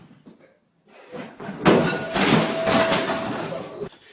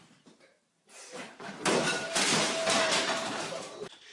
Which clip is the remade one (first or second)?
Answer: second